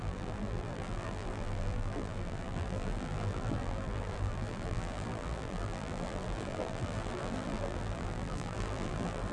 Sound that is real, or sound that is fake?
fake